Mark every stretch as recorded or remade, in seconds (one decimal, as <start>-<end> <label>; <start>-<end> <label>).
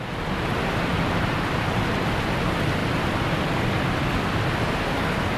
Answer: 0.0-5.4 recorded